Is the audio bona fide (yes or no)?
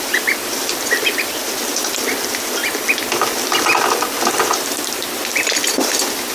yes